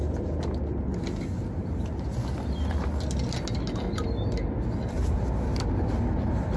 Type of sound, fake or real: real